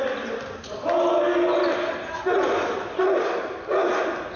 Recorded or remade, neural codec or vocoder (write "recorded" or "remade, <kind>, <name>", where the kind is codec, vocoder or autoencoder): recorded